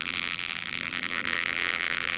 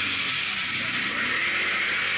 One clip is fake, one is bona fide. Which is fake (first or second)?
first